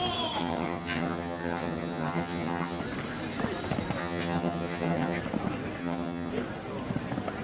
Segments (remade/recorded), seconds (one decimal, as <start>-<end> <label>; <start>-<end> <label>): 0.0-0.4 recorded; 0.4-2.8 remade; 2.8-4.0 recorded; 4.0-5.2 remade; 5.2-5.8 recorded; 5.8-6.3 remade; 6.3-7.4 recorded